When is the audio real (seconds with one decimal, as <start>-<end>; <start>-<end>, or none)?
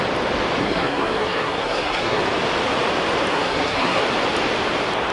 0.0-0.6; 2.2-3.3; 4.0-5.1